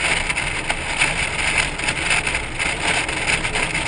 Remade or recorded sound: recorded